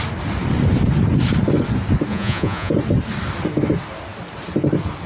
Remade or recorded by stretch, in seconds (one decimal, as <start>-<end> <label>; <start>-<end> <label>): 0.0-2.1 recorded; 2.1-2.7 remade; 2.7-5.1 recorded